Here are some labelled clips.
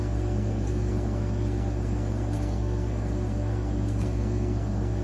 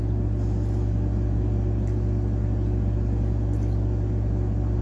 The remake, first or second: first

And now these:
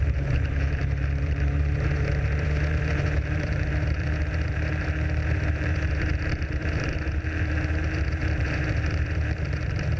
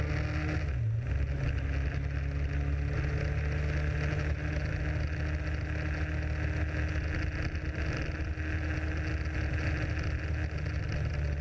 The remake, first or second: first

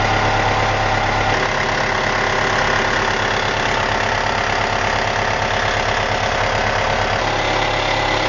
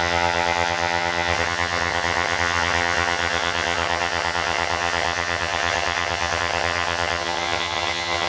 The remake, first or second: second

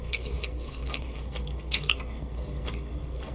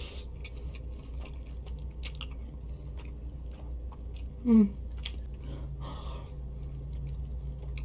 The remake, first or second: first